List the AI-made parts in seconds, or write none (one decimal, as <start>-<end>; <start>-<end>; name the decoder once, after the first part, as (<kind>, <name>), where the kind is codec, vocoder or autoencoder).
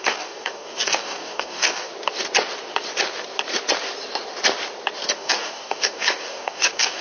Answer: 0.0-1.9 (codec, DAC); 5.1-7.0